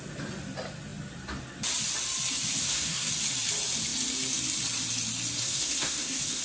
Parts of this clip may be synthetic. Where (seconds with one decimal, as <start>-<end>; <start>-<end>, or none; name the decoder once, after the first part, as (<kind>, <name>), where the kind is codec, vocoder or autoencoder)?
2.6-3.1 (codec, SNAC); 5.4-6.4